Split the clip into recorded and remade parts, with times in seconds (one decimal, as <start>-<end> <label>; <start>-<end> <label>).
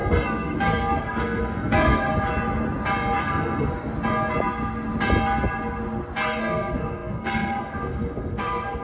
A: 0.0-2.1 remade; 2.1-3.2 recorded; 3.2-3.9 remade; 3.9-6.4 recorded; 6.4-8.8 remade